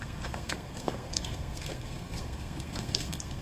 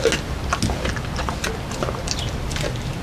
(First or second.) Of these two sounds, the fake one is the first